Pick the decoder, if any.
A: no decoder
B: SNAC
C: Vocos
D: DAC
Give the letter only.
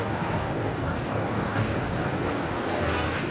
D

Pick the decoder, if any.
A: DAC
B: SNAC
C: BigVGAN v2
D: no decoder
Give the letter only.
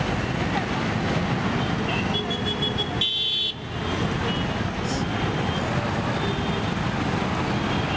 D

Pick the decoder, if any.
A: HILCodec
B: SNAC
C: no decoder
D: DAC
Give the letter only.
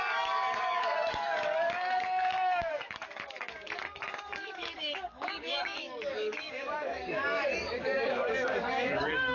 D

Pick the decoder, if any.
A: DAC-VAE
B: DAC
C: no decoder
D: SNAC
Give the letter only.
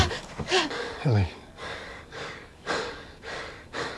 B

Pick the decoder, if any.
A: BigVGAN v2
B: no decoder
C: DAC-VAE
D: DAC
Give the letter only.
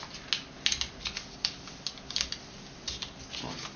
B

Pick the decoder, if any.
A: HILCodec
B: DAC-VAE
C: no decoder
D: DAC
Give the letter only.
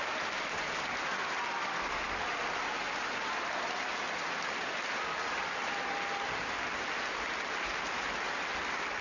C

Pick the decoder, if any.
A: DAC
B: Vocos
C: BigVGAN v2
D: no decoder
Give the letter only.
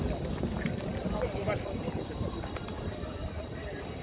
D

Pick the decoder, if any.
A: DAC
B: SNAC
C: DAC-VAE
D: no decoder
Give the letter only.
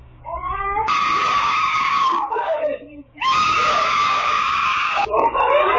A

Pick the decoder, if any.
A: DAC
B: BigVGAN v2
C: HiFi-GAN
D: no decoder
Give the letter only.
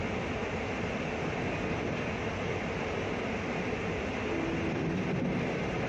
D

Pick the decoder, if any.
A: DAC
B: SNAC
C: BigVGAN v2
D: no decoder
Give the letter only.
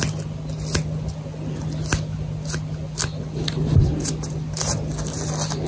D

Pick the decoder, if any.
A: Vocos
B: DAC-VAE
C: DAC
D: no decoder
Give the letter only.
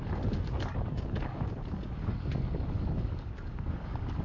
C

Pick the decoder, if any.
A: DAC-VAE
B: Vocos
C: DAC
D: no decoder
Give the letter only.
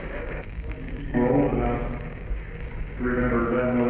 C